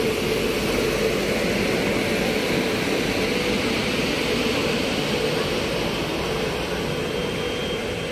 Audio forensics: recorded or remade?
recorded